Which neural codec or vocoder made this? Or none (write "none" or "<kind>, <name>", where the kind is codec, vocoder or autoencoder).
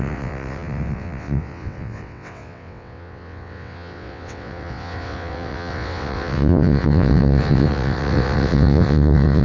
vocoder, WaveNeXt